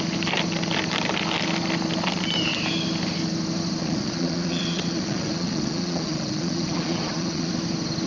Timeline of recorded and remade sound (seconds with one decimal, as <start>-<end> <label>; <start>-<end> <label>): 0.0-3.8 recorded; 3.8-7.5 remade; 7.5-8.1 recorded